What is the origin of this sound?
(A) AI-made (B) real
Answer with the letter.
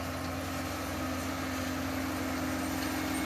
B